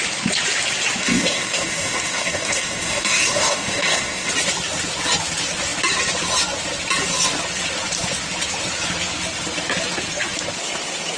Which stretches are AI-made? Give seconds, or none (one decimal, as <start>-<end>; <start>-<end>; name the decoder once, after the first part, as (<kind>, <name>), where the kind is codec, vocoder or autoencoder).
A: 1.0-4.3 (codec, DAC)